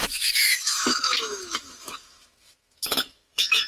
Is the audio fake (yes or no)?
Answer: yes